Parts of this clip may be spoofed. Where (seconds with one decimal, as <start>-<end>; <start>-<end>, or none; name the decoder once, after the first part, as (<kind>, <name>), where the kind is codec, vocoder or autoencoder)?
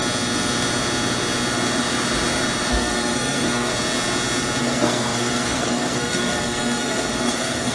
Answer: 2.7-3.7 (codec, SNAC); 4.6-7.7